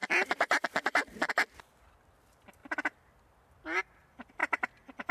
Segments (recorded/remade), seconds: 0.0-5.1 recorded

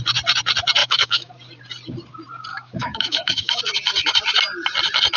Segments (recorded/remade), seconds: 0.0-0.8 recorded; 0.8-1.3 remade; 1.3-2.5 recorded; 2.5-3.6 remade; 3.6-5.2 recorded